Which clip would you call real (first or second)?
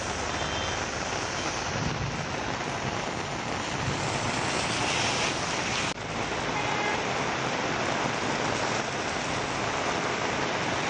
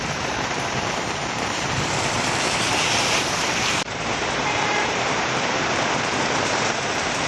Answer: first